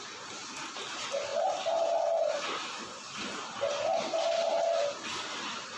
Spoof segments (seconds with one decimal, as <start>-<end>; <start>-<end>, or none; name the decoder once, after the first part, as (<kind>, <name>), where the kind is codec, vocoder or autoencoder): 1.3-2.0 (vocoder, BigVGAN v2)

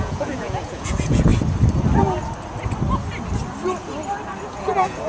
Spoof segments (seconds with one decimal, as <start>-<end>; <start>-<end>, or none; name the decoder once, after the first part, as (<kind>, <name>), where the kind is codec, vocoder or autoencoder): 0.0-1.3 (vocoder, Vocos); 4.4-5.1